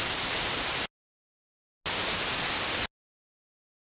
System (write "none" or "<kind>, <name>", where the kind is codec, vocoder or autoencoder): none